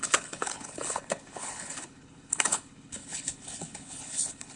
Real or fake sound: fake